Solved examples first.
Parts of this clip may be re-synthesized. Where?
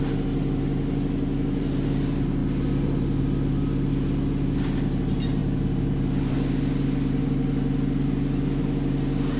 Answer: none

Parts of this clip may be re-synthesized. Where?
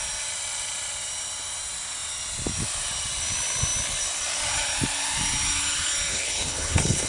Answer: 6.1-7.1 (codec, HILCodec)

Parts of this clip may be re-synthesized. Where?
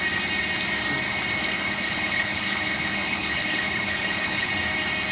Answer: 1.4-4.5 (codec, HILCodec)